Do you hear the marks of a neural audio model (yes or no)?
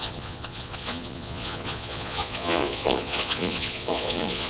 yes